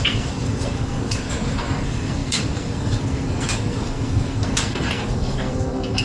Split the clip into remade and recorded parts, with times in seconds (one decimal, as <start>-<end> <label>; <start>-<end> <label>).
0.0-6.0 remade